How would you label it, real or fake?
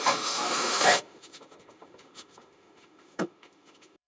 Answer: fake